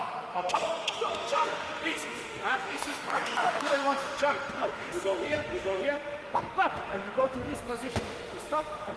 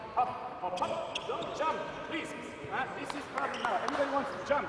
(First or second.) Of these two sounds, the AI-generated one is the first